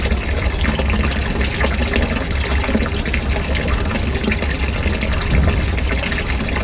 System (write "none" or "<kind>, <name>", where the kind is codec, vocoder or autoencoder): none